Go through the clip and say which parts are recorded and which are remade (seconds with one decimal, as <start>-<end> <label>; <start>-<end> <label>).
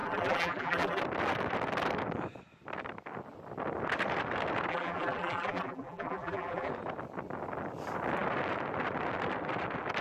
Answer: 0.0-1.0 remade; 1.0-4.7 recorded; 4.7-6.7 remade; 6.7-10.0 recorded